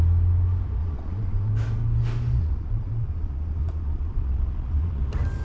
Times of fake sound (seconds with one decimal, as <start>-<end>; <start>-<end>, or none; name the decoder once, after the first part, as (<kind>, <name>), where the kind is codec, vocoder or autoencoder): 0.8-1.5 (vocoder, Vocos); 2.4-5.0